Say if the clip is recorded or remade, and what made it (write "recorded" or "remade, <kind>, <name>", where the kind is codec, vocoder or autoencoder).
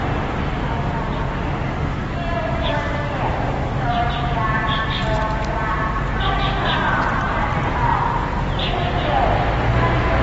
recorded